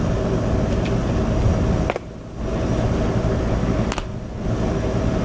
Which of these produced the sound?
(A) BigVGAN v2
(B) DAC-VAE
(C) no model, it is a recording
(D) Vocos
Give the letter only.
C